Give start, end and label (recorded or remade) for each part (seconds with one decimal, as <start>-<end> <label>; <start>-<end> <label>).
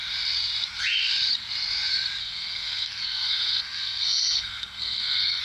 0.0-2.2 recorded; 2.2-5.4 remade